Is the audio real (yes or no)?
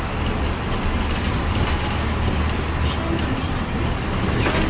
yes